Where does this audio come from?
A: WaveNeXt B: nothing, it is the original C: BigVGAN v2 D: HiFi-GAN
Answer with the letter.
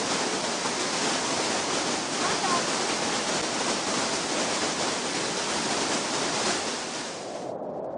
B